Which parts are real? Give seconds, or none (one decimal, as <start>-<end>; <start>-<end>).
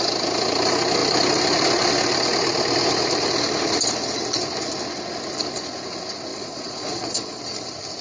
0.0-6.3; 7.4-8.0